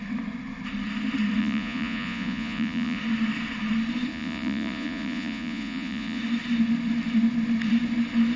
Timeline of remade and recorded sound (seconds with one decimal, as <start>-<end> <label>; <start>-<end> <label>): 0.0-1.4 recorded; 1.4-3.0 remade; 3.0-4.1 recorded; 4.1-6.2 remade; 6.2-8.4 recorded